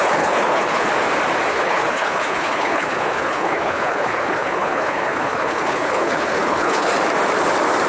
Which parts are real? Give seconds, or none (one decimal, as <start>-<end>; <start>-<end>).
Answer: 0.9-1.5; 6.9-7.9

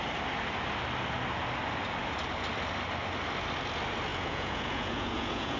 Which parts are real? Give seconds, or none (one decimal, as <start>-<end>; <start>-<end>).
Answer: 0.0-4.1

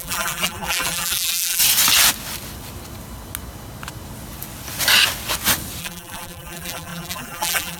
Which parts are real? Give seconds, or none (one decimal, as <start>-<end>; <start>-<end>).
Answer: 1.6-5.8

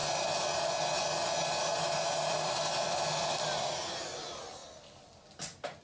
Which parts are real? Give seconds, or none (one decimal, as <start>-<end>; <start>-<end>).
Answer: 0.0-5.8

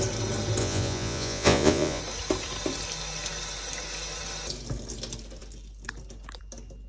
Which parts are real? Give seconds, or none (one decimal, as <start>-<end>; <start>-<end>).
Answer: 0.0-0.6; 2.0-6.9

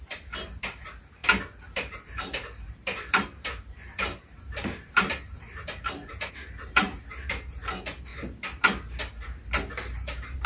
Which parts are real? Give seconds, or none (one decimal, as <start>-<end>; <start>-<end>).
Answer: 8.1-9.6

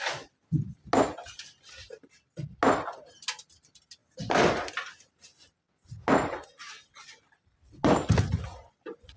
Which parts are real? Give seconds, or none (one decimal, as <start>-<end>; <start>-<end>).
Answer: 0.0-9.2

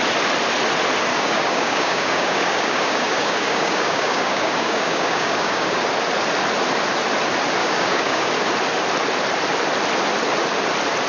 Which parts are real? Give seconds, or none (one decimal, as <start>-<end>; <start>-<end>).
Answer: 0.0-1.1; 5.8-7.6; 8.3-11.1